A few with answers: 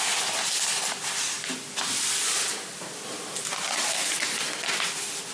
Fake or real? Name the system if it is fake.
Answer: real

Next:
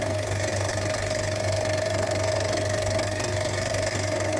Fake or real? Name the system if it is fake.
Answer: fake, codec, SNAC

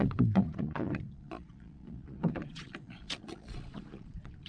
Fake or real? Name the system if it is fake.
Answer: fake, vocoder, Vocos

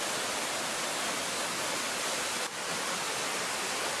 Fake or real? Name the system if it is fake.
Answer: real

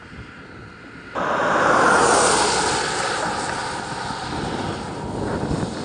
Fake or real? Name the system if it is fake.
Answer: real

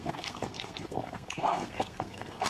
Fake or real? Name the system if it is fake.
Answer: fake, codec, SNAC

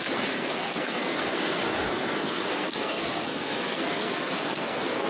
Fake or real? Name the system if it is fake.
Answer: fake, codec, SNAC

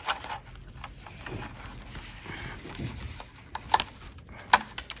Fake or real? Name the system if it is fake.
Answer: real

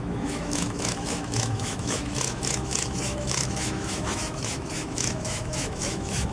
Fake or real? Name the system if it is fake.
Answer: fake, autoencoder, DAC-VAE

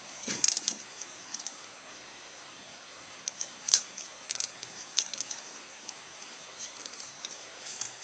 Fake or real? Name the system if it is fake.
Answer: fake, codec, SNAC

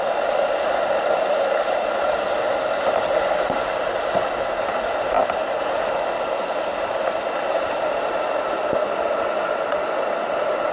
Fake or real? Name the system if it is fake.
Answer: real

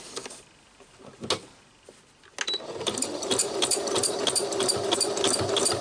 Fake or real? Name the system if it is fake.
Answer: real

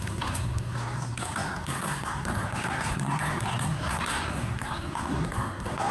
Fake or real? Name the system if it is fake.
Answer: fake, codec, SNAC